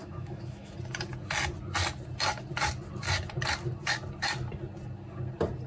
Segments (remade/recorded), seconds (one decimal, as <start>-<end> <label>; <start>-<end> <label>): 0.0-0.7 remade; 0.7-5.7 recorded